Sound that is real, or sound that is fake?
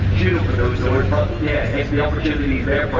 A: real